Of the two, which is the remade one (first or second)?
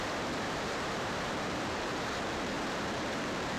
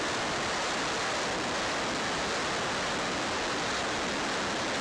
first